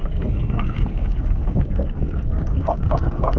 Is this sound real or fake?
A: fake